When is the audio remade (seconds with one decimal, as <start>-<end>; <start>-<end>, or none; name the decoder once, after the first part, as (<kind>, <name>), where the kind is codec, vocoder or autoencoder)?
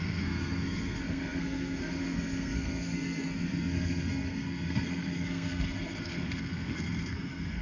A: 0.0-7.6 (codec, SNAC)